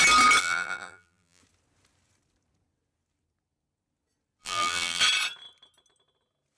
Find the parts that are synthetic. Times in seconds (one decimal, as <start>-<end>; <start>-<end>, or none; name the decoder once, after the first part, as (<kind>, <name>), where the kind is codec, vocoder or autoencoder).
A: 0.4-1.4 (vocoder, BigVGAN v2); 4.4-5.0